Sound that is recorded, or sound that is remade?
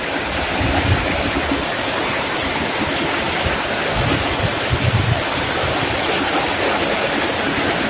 recorded